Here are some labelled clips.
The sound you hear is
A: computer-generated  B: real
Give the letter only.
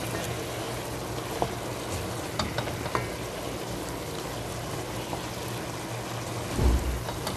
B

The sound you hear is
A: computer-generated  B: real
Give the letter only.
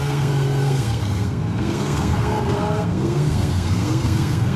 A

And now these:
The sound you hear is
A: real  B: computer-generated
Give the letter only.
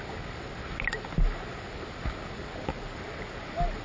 A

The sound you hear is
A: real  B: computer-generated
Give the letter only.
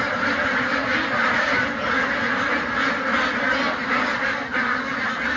A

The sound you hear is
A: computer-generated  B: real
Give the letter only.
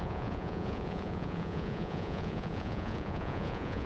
A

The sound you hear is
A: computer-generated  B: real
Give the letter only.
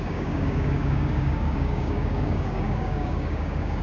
A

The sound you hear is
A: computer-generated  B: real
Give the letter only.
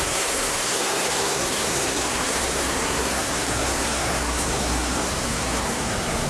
A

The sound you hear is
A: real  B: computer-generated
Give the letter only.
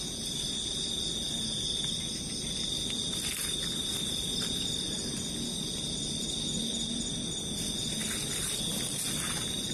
A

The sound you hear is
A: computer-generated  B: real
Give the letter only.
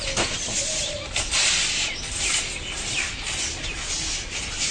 B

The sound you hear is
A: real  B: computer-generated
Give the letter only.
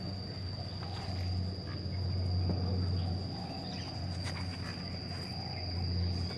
A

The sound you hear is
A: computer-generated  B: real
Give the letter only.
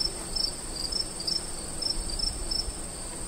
B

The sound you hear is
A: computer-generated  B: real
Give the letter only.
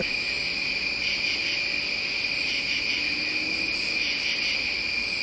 B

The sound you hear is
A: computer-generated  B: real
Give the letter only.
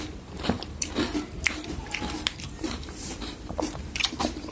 A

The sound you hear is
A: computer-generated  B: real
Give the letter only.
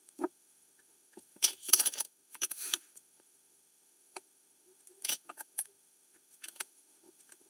A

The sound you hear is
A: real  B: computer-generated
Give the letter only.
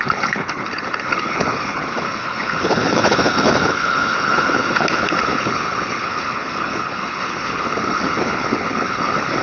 B